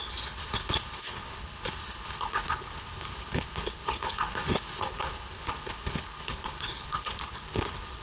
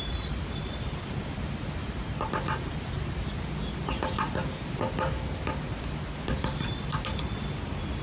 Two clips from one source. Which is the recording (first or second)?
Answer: second